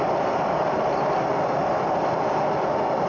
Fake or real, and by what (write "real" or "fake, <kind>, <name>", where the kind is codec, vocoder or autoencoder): real